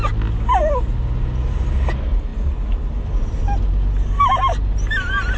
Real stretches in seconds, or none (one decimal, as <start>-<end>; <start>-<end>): 0.0-5.4